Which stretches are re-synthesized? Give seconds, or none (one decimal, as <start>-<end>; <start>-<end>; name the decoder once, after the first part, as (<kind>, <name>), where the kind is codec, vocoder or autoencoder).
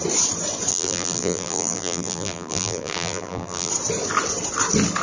0.7-3.7 (vocoder, BigVGAN v2)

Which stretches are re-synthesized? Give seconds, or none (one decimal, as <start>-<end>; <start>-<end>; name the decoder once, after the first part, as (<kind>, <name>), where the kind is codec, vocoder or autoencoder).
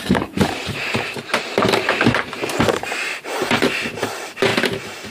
0.0-5.1 (vocoder, BigVGAN v2)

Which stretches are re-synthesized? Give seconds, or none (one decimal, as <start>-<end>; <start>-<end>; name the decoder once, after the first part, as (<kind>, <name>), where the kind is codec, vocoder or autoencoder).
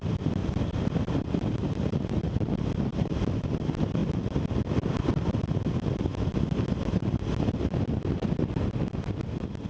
0.4-2.1 (vocoder, BigVGAN v2); 2.9-3.5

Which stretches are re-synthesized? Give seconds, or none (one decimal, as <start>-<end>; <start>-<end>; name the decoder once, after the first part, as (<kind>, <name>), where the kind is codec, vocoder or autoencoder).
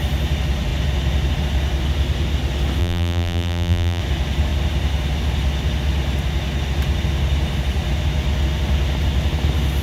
2.8-4.0 (vocoder, BigVGAN v2)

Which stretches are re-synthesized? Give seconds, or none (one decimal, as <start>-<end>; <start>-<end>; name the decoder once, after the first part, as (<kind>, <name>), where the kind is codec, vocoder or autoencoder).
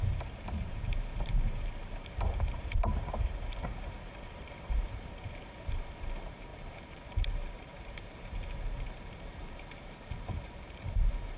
0.0-11.4 (vocoder, BigVGAN v2)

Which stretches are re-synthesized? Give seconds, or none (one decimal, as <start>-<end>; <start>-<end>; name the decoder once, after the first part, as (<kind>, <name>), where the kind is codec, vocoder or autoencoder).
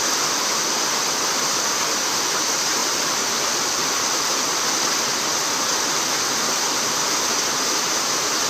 2.8-4.8 (vocoder, BigVGAN v2)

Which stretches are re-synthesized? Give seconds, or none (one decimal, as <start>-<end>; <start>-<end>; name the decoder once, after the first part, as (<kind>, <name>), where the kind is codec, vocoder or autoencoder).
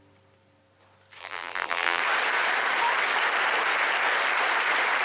1.2-2.0 (vocoder, BigVGAN v2)